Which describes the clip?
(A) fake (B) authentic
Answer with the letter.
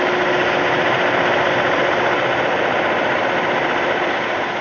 B